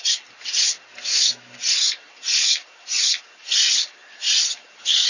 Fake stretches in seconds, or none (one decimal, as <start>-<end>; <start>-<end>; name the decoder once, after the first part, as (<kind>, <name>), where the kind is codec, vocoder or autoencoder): 0.9-1.6 (autoencoder, DAC-VAE)